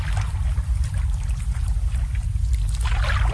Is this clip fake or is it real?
real